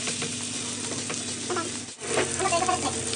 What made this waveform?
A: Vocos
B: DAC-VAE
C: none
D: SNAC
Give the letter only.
C